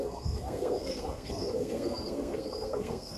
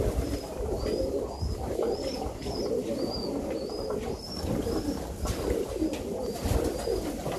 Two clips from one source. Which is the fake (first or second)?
first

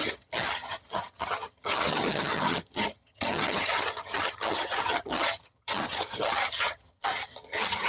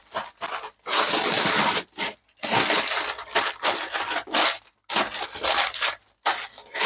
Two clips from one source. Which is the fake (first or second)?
first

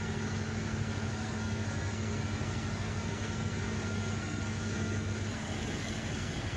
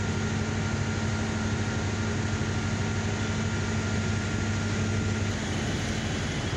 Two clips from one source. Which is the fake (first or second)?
first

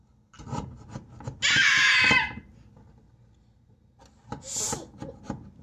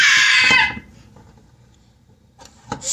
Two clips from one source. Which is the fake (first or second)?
second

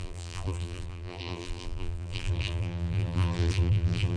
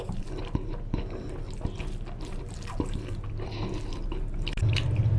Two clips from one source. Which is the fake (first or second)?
first